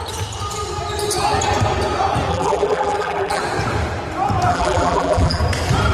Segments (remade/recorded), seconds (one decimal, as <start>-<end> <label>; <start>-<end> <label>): 0.0-2.3 recorded; 2.3-3.4 remade; 3.4-4.5 recorded; 4.5-5.4 remade; 5.4-5.9 recorded